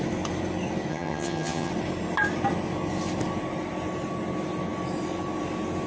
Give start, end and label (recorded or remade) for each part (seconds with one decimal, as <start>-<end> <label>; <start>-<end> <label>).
0.0-0.9 recorded; 0.9-1.7 remade; 1.7-5.9 recorded